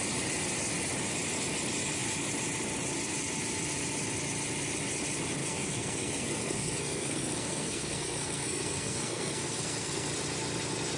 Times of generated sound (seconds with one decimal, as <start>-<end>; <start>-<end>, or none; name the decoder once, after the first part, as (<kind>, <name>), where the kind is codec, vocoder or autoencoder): 5.4-10.1 (codec, SNAC)